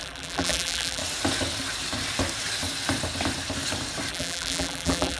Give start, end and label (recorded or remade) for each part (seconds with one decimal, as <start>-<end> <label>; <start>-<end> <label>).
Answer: 0.0-1.0 remade; 1.0-4.1 recorded; 4.1-5.2 remade